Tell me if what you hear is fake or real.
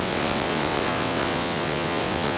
fake